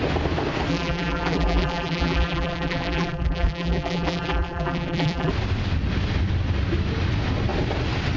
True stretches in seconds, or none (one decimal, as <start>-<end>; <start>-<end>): 0.0-0.7; 5.3-8.2